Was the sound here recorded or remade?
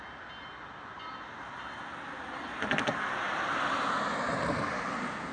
recorded